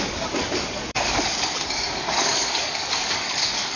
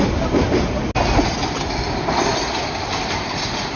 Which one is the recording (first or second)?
second